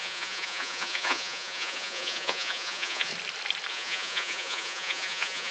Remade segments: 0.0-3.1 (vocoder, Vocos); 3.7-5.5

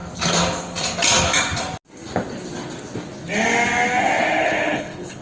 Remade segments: 4.4-5.2 (codec, HILCodec)

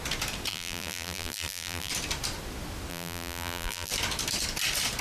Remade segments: 0.5-1.9 (vocoder, BigVGAN v2); 2.9-3.9

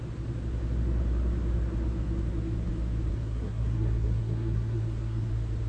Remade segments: 3.1-5.3 (codec, SNAC)

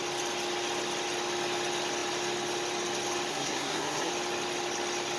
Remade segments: 3.3-4.1 (codec, SNAC)

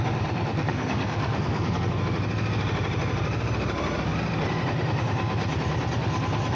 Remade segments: 0.5-2.0 (codec, SNAC)